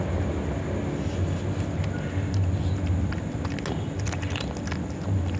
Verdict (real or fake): real